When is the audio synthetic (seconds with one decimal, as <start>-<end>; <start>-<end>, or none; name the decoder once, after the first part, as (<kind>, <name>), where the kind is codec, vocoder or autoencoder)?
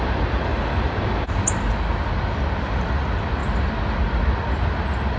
none